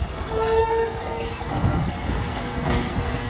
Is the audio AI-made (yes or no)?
yes